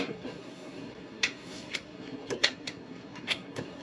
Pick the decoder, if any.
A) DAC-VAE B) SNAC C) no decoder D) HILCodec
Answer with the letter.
B